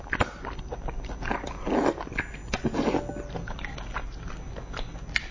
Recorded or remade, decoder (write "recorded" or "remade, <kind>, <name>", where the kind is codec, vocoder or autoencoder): recorded